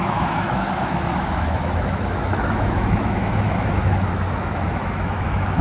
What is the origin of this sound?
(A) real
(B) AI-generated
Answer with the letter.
B